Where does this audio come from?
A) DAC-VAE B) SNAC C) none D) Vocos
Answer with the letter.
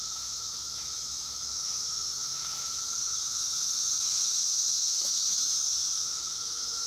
A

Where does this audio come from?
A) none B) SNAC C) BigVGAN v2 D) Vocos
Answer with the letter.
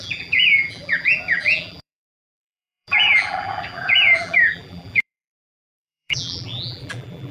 C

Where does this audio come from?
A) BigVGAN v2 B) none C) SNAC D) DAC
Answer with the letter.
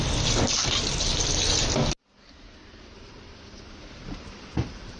B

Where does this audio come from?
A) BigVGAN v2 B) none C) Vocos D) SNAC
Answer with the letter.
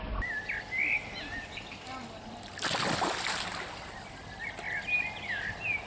B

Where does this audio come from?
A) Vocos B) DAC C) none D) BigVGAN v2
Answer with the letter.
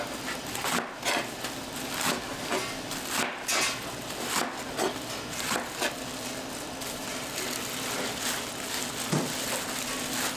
C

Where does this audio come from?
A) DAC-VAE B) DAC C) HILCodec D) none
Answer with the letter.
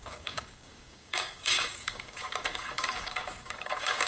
B